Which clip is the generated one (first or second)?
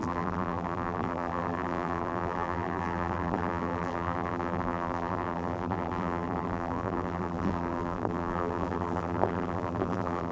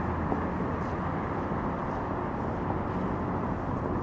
first